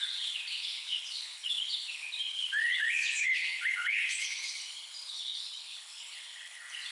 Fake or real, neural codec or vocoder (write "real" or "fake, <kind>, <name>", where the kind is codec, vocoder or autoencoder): fake, codec, HILCodec